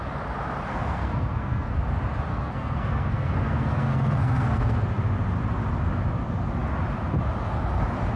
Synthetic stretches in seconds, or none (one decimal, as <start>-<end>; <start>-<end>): 0.7-1.7; 2.3-4.8